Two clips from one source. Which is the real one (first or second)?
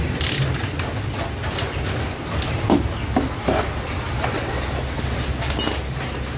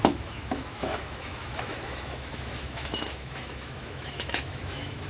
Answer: first